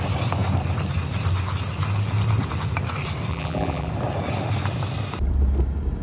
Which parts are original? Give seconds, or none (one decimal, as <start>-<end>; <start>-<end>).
0.0-3.3; 3.9-6.0

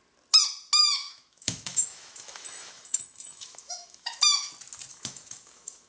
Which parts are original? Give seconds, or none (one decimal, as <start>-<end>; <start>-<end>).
0.0-1.0; 4.5-4.9

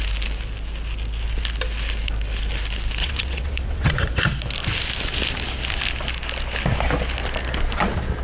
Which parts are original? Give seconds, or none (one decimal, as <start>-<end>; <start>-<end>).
0.0-3.0; 3.9-8.2

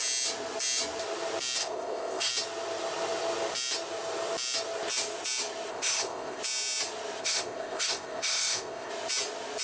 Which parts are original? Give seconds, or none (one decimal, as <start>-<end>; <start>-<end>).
0.0-1.6; 2.3-5.7; 6.4-7.2; 8.9-9.6

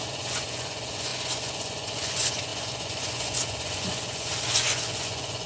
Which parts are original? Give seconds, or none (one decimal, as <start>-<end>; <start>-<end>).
none

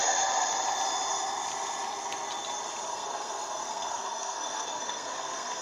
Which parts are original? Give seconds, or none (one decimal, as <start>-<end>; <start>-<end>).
0.0-2.9

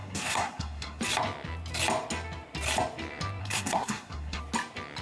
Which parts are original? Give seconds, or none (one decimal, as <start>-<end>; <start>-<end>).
1.0-3.4; 4.4-5.0